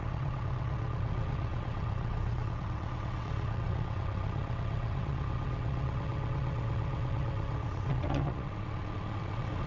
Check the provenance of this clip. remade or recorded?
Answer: remade